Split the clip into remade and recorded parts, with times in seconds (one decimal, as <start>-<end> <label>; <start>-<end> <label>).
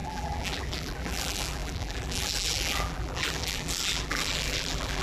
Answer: 0.0-5.0 remade